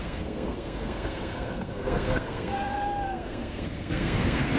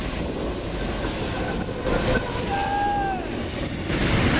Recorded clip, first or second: second